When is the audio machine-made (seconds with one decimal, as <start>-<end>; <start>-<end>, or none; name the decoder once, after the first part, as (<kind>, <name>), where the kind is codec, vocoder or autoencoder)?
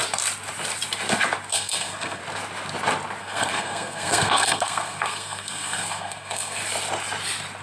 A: 1.5-2.2 (codec, SNAC); 3.2-6.6